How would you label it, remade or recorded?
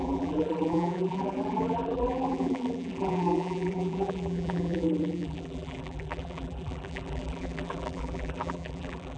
remade